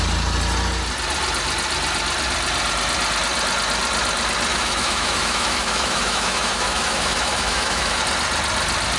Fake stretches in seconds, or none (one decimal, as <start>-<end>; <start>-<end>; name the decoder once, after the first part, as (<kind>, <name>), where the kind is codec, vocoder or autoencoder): 4.5-8.0 (autoencoder, DAC-VAE)